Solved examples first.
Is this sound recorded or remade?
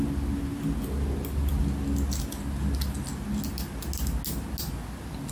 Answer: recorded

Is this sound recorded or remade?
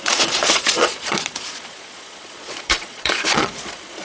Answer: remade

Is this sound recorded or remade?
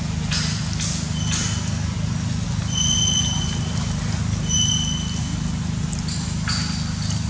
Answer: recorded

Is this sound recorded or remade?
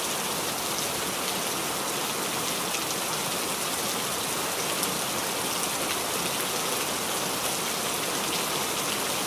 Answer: recorded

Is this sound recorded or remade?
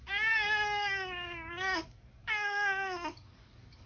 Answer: remade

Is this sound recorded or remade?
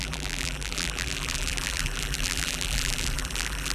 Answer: remade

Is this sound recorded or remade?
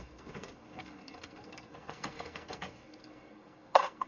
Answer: remade